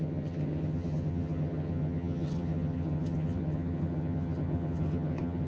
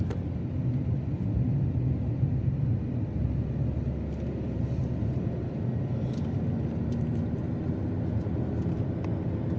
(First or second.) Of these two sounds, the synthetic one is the first